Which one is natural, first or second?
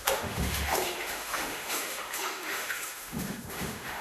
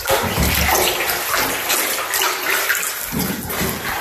second